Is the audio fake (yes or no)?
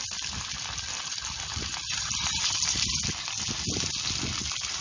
no